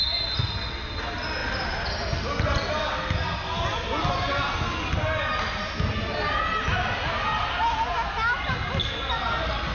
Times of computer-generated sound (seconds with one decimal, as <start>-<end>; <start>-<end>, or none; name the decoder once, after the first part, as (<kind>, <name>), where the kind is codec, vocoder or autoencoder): none